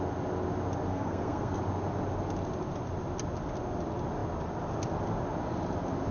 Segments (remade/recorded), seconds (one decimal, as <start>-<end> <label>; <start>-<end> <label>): 0.0-0.9 recorded; 0.9-1.6 remade; 1.6-6.1 recorded